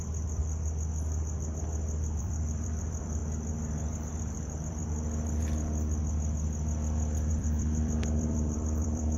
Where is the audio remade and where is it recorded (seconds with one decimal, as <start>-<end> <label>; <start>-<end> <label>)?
0.0-0.4 remade; 0.4-2.2 recorded; 2.2-3.2 remade; 3.2-4.1 recorded; 4.1-4.8 remade; 4.8-7.3 recorded; 7.3-9.2 remade